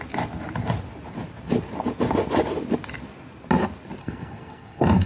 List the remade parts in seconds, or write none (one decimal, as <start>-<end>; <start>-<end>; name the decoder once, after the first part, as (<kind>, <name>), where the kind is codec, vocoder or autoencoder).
4.0-5.1 (codec, SNAC)